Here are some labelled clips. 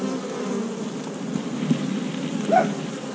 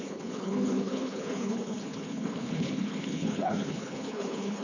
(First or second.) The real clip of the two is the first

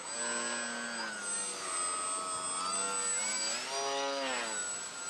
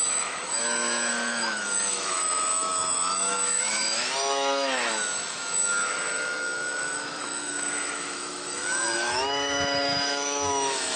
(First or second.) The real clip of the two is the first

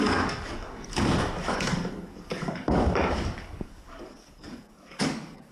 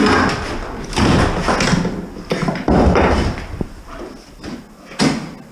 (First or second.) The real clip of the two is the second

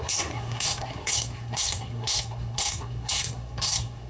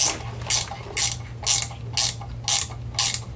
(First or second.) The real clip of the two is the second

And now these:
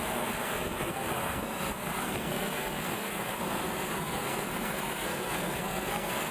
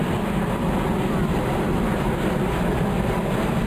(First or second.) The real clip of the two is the second